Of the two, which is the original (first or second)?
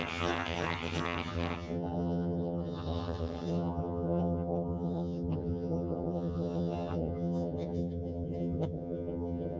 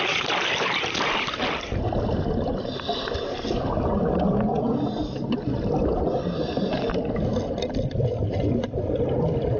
second